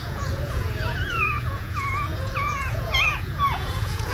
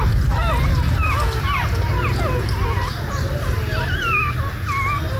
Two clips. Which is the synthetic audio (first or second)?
first